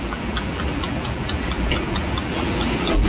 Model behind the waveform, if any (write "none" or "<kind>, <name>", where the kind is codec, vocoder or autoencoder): vocoder, BigVGAN v2